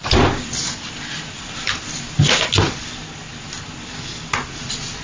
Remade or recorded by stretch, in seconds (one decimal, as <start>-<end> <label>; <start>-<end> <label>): 0.0-5.0 recorded